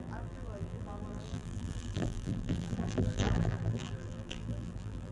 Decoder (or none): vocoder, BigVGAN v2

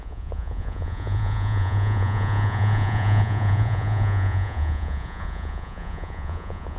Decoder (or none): vocoder, Vocos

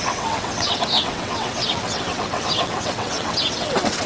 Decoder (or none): vocoder, WaveNeXt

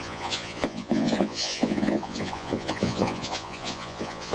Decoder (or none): vocoder, Vocos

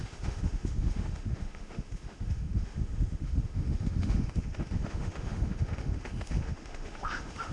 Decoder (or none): autoencoder, DAC-VAE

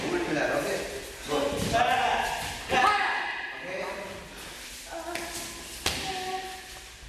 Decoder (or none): none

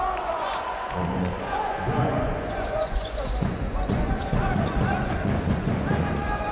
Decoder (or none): vocoder, Vocos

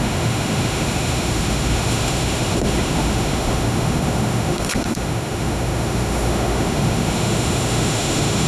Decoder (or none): autoencoder, DAC-VAE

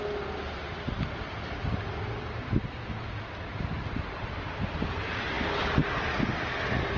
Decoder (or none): none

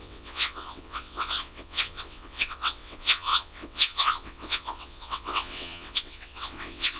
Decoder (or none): vocoder, WaveNeXt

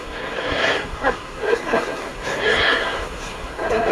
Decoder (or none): codec, SNAC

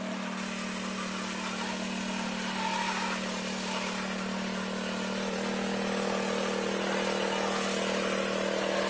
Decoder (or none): none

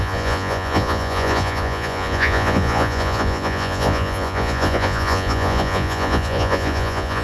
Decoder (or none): vocoder, Vocos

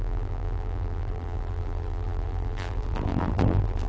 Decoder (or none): vocoder, BigVGAN v2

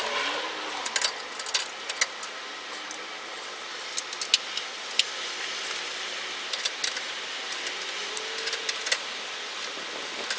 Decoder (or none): none